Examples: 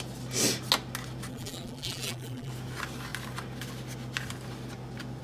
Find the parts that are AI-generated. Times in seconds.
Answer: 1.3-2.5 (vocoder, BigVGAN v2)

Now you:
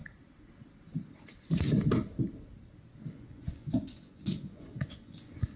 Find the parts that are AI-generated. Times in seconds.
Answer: 3.1-5.6 (vocoder, Vocos)

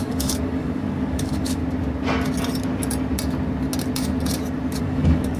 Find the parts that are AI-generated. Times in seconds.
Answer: 0.0-1.6 (codec, DAC); 4.8-5.4

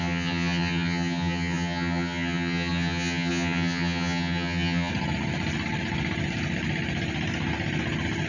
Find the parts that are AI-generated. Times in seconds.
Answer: 0.0-4.9 (vocoder, HiFi-GAN)

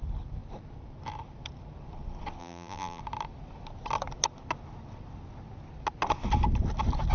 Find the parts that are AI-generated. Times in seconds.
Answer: 2.4-3.0 (vocoder, BigVGAN v2)

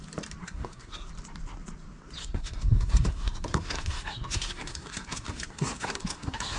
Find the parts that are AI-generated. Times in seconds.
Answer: 0.4-1.1 (codec, SNAC); 2.2-6.6